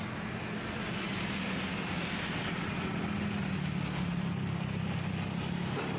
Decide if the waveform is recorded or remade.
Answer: recorded